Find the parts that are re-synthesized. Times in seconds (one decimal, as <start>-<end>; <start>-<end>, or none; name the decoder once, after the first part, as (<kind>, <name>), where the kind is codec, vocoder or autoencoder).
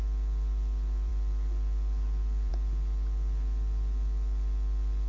none